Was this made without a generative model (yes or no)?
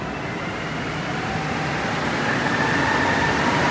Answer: yes